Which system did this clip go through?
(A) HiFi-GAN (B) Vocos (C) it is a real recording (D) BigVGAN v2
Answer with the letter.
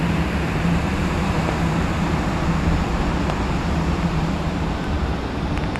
D